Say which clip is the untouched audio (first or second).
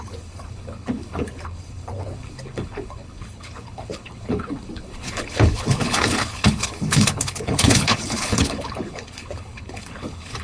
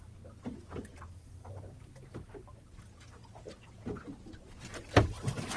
second